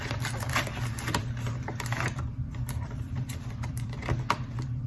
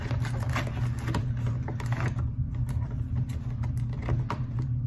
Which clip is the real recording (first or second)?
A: second